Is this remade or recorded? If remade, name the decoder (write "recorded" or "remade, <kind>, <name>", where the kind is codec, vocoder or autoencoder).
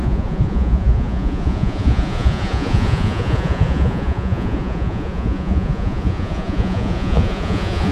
remade, vocoder, Vocos